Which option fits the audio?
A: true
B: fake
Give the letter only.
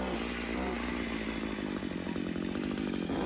A